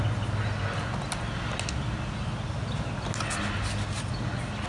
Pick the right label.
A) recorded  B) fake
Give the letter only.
A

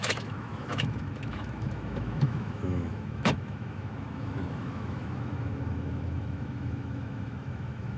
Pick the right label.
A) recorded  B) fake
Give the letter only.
B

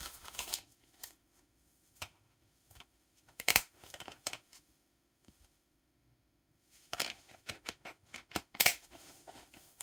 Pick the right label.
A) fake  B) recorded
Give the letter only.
A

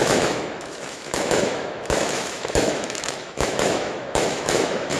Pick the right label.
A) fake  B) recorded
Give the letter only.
A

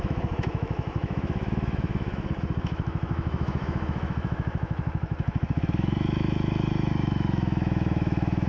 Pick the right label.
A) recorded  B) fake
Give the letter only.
B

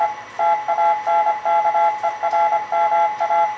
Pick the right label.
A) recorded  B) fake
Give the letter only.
A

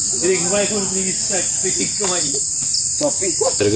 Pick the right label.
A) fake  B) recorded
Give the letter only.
B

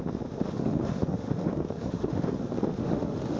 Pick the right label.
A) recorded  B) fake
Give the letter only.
B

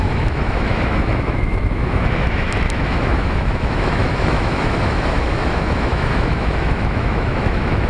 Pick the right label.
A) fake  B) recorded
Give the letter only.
A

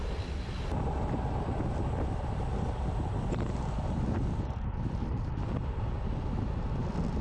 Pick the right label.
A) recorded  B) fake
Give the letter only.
A